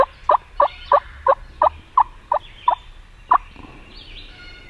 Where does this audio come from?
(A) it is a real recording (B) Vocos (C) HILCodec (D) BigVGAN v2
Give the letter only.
A